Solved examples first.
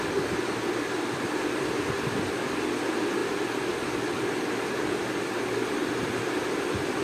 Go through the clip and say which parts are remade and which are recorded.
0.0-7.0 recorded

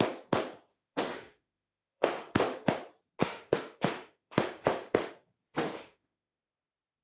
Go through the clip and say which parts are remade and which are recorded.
0.0-0.7 recorded; 0.7-2.7 remade; 2.7-3.2 recorded; 3.2-5.1 remade; 5.1-5.6 recorded; 5.6-6.4 remade; 6.4-7.0 recorded

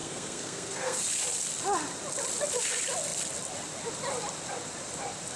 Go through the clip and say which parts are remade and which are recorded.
0.0-1.0 remade; 1.0-5.4 recorded

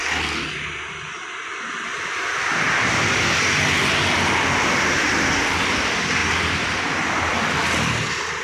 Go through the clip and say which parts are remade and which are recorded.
0.0-6.2 recorded; 6.2-6.9 remade; 6.9-8.4 recorded

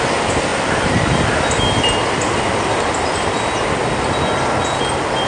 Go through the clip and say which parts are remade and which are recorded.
0.0-5.3 recorded

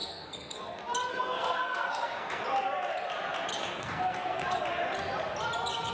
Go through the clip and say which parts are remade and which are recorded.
0.0-0.6 remade; 0.6-1.1 recorded; 1.1-2.4 remade; 2.4-3.5 recorded; 3.5-4.6 remade; 4.6-5.9 recorded